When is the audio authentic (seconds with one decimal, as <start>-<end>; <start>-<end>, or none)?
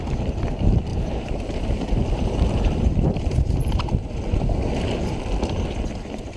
0.0-0.9; 4.1-6.4